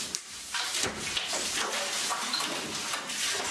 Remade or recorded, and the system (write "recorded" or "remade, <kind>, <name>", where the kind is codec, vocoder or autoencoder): recorded